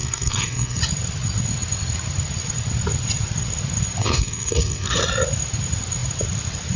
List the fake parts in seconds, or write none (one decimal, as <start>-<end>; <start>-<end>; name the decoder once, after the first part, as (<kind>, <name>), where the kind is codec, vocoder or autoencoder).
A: 0.0-0.8 (codec, SNAC); 4.0-5.0